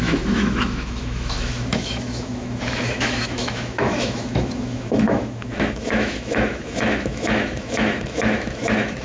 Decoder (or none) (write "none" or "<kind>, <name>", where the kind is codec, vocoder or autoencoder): autoencoder, DAC-VAE